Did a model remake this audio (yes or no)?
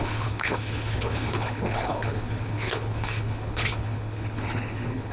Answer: yes